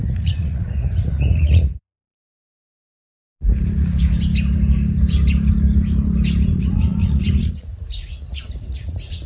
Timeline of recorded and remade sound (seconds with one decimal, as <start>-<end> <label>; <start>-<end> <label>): 0.0-2.6 remade; 2.6-6.5 recorded; 6.5-9.3 remade